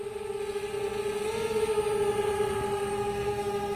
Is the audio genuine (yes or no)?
yes